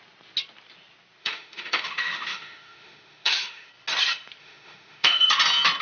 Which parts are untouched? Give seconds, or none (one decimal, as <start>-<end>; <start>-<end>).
0.0-1.2; 3.7-4.4; 5.3-5.8